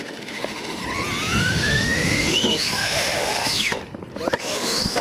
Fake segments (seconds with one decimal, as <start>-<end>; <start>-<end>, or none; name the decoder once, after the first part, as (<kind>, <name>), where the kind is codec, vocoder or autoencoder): 0.0-0.8 (autoencoder, DAC-VAE); 1.4-3.8; 4.4-5.0